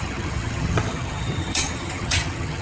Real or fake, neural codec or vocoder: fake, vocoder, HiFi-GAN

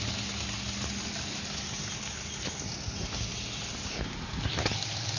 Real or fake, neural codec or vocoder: real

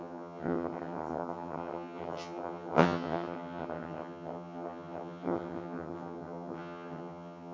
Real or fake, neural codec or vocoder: fake, vocoder, HiFi-GAN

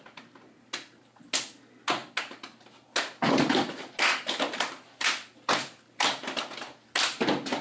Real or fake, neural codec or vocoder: real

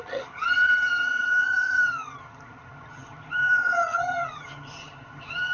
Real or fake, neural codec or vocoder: fake, vocoder, HiFi-GAN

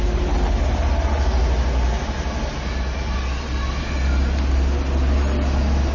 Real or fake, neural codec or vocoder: real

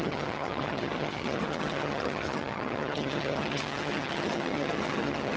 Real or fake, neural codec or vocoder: fake, vocoder, HiFi-GAN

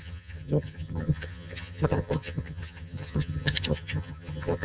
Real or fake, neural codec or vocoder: fake, vocoder, HiFi-GAN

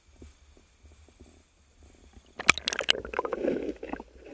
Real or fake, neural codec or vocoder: real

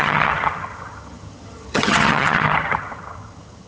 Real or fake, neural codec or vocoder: fake, vocoder, HiFi-GAN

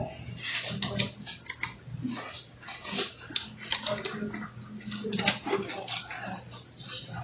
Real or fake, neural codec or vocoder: real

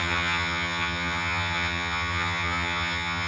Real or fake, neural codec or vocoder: fake, vocoder, HiFi-GAN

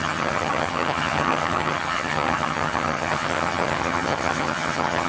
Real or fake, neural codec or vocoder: fake, vocoder, HiFi-GAN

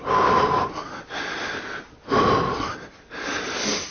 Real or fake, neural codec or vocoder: real